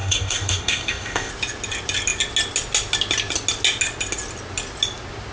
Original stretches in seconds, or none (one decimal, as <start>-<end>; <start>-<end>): 1.3-5.3